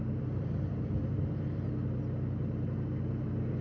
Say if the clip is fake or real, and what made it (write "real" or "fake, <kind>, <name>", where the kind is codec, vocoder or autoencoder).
real